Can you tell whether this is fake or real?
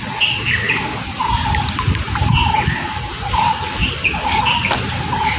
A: real